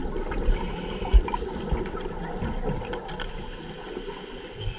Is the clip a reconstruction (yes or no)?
no